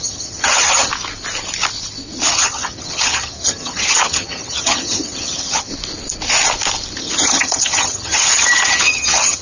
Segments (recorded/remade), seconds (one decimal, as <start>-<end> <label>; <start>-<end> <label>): 0.0-0.9 remade; 0.9-2.3 recorded; 2.3-5.7 remade; 5.7-7.0 recorded; 7.0-9.4 remade